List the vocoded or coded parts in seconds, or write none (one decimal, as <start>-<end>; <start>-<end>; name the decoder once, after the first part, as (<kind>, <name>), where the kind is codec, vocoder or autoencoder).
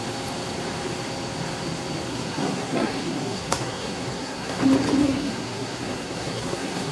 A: 2.1-4.6 (codec, SNAC); 5.0-6.9